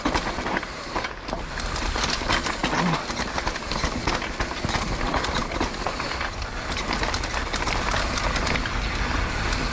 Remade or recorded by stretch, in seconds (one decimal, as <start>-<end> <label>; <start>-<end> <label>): 0.0-9.7 recorded